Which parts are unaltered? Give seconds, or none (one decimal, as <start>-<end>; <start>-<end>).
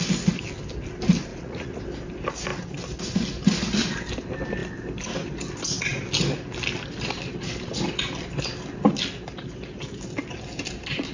0.0-1.3; 1.8-11.1